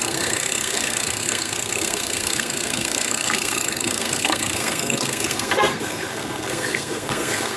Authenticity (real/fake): fake